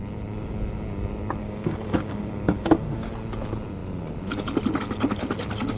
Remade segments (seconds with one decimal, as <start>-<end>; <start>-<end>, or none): 1.4-3.1